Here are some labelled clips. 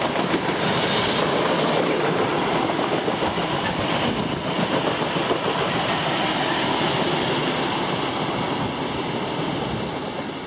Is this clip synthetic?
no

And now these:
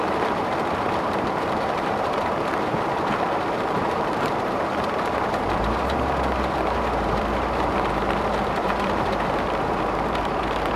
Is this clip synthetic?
yes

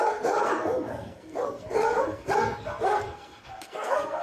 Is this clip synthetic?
yes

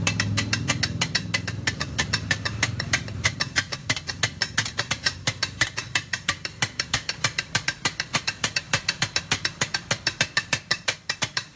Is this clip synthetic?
yes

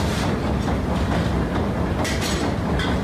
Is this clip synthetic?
no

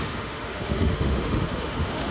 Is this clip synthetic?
yes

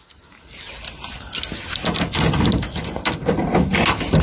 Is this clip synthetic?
no